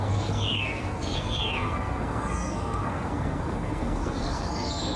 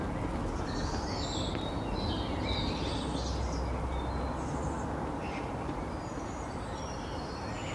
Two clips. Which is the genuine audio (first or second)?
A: second